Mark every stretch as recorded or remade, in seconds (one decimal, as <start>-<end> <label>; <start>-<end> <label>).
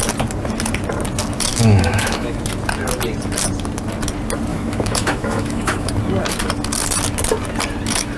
0.0-1.5 recorded; 1.5-2.4 remade; 2.4-4.5 recorded; 4.5-5.9 remade; 5.9-8.2 recorded